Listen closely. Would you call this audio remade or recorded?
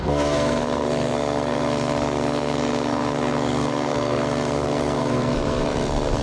remade